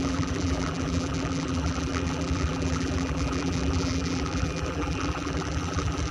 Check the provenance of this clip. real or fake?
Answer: fake